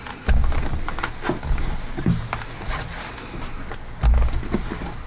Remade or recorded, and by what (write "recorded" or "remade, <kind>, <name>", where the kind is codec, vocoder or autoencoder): recorded